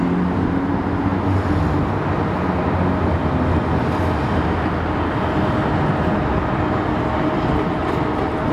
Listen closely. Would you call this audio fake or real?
real